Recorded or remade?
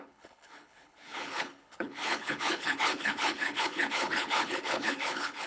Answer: remade